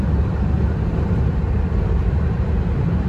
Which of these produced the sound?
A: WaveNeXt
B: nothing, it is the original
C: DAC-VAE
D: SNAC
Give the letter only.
B